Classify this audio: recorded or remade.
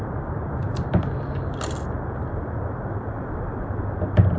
recorded